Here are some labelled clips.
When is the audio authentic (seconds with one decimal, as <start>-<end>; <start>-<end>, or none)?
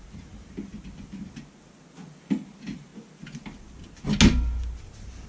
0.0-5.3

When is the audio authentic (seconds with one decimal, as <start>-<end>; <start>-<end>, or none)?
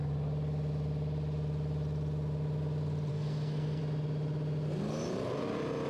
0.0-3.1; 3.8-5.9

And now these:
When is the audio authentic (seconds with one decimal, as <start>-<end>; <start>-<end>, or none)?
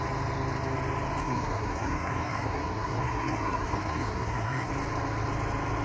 0.0-1.2; 4.7-5.8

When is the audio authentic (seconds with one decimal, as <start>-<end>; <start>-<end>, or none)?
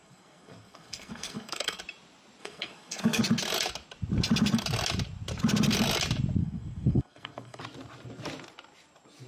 1.8-2.4; 3.2-6.4; 7.6-9.3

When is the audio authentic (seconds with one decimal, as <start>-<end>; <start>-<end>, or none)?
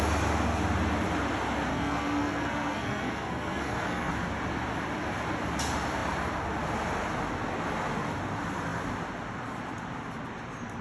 0.0-1.7; 4.1-10.8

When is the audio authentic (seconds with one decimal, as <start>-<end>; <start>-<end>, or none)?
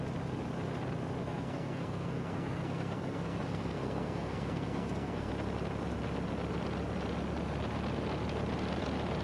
0.0-1.2; 5.3-9.2